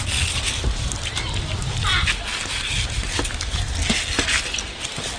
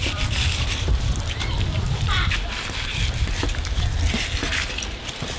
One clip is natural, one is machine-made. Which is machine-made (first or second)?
second